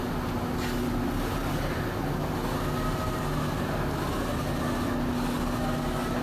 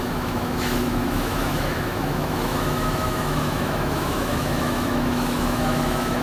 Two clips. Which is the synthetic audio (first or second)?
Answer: second